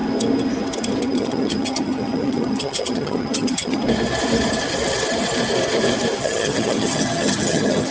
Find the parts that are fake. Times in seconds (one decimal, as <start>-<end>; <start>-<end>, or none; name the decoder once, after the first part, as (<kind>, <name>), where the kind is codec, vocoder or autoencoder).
1.0-3.8 (vocoder, HiFi-GAN); 6.2-7.9